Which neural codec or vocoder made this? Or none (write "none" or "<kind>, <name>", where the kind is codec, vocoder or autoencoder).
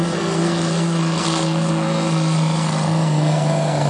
codec, SNAC